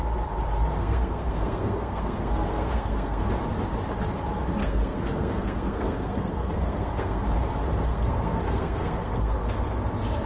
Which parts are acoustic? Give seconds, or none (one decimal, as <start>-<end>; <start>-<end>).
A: 0.0-0.8; 3.2-4.6; 7.2-7.9; 9.5-10.3